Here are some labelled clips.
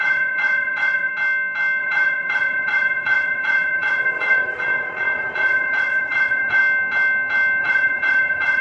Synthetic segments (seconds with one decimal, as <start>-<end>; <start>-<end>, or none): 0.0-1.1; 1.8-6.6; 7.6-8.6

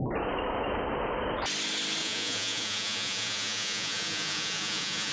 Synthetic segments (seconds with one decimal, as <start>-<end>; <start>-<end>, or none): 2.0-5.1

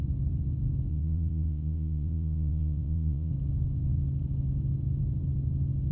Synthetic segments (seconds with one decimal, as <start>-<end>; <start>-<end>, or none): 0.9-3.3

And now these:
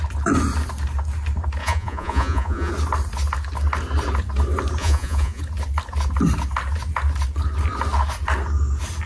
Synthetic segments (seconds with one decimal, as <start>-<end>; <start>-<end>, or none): 1.6-2.7; 4.8-5.4